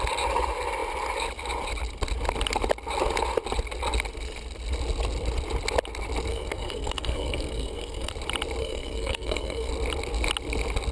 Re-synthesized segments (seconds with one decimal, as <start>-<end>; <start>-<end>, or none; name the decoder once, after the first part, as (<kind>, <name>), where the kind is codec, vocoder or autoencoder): 6.3-8.1 (codec, SNAC); 8.6-9.7

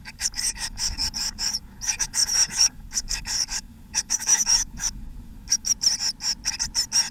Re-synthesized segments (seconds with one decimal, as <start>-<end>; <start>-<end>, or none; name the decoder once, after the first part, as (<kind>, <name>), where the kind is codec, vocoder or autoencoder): 0.0-5.7 (codec, DAC)

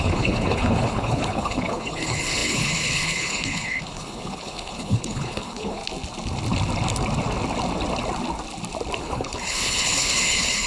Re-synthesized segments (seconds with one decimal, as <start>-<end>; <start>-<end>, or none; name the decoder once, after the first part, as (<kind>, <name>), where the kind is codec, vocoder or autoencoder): 0.0-5.8 (codec, HILCodec); 9.0-10.7

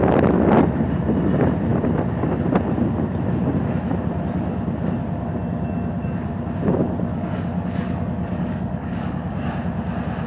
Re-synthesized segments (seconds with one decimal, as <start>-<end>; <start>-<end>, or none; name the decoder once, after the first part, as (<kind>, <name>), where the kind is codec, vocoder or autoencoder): 7.1-9.5 (codec, DAC)

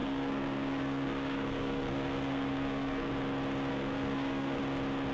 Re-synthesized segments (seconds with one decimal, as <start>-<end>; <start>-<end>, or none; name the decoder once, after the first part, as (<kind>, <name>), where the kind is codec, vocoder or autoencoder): 0.0-3.1 (codec, SNAC); 3.7-4.6

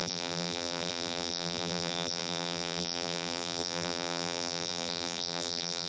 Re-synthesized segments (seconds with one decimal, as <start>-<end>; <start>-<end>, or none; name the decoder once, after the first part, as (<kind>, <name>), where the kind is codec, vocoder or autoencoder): 0.0-5.9 (vocoder, BigVGAN v2)

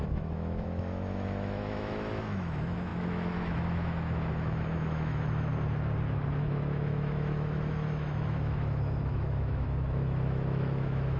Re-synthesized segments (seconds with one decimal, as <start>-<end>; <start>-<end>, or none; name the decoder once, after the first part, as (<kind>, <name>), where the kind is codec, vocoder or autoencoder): 0.0-5.5 (autoencoder, DAC-VAE); 6.4-11.2

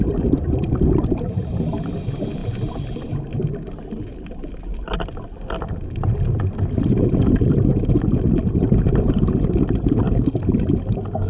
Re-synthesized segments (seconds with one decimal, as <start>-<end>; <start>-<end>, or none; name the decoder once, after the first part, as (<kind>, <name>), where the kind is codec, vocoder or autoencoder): none